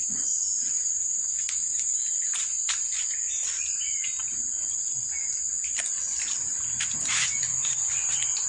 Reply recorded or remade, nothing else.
recorded